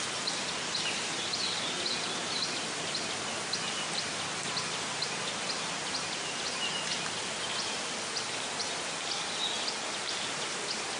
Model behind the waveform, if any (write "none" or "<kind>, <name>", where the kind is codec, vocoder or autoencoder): none